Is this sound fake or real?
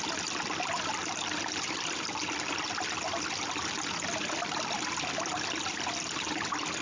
real